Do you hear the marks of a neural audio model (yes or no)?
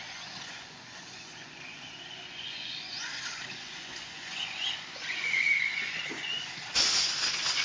yes